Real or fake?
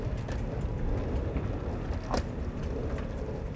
real